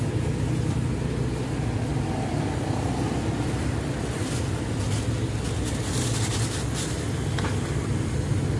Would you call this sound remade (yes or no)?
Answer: no